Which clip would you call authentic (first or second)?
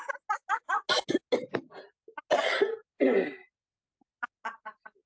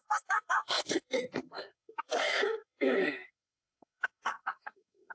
first